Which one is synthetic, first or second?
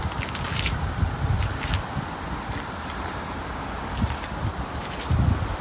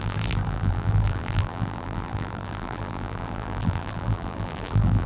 second